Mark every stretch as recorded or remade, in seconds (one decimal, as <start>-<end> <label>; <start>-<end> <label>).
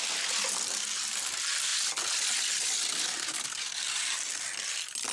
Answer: 0.0-5.1 recorded